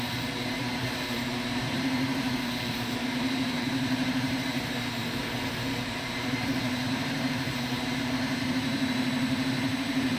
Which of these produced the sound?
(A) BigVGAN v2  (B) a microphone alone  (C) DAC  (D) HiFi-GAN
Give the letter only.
A